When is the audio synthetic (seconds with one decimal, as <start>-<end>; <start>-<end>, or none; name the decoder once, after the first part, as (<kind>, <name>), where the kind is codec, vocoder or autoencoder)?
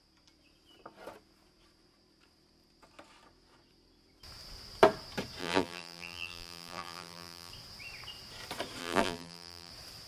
5.4-7.5 (vocoder, BigVGAN v2); 8.8-9.7